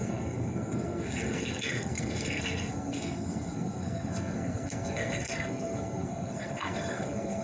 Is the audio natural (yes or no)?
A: no